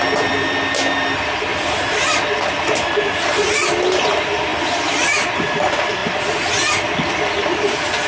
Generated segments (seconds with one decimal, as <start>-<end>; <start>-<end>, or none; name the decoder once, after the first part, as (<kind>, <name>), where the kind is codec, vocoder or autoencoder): 0.0-1.5 (vocoder, BigVGAN v2); 3.3-4.5; 5.4-6.0; 7.1-8.1